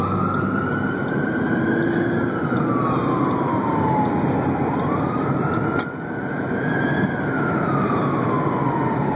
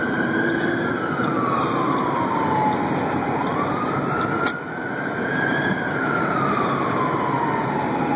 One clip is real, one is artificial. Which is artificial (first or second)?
second